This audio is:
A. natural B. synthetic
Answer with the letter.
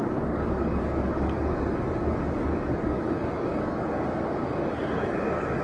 B